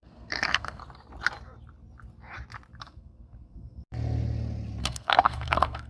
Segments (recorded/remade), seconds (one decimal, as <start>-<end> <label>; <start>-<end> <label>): 0.0-0.8 remade; 0.8-2.8 recorded; 2.8-3.8 remade; 3.8-4.8 recorded; 4.8-5.9 remade